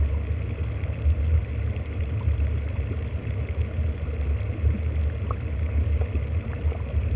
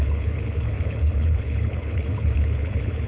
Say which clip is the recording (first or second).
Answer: first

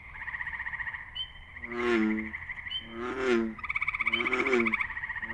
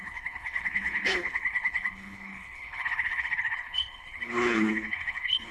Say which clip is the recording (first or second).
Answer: first